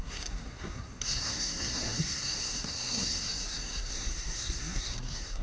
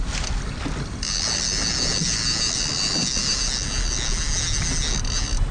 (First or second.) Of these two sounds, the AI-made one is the first